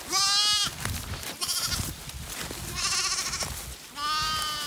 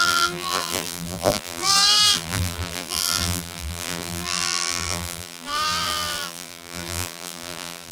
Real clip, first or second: first